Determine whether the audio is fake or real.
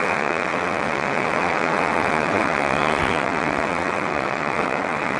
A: fake